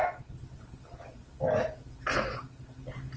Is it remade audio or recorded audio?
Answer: recorded